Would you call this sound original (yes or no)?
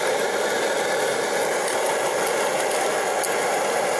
yes